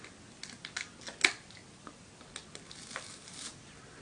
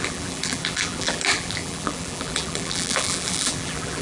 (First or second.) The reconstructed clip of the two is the second